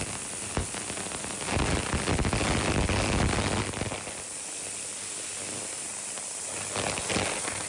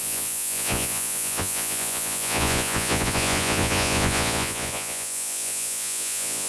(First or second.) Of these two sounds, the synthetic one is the second